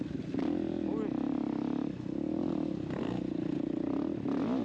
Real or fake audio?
real